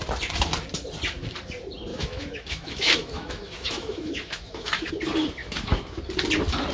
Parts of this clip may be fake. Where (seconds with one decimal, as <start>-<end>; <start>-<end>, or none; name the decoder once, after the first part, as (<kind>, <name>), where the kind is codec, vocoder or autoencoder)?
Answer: 1.9-4.9 (autoencoder, DAC-VAE); 5.4-6.0